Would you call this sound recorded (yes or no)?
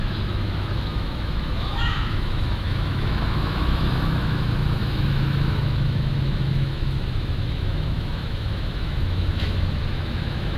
no